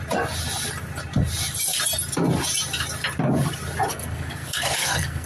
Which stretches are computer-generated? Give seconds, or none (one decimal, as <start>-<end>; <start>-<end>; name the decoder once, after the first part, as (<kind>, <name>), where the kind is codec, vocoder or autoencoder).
3.9-5.3 (codec, SNAC)